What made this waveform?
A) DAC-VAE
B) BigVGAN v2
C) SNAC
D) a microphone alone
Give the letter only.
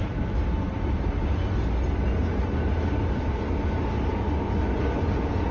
D